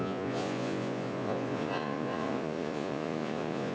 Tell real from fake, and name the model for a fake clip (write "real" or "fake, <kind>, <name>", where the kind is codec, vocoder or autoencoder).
fake, vocoder, Vocos